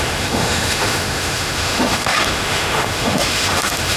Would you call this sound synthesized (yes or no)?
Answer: yes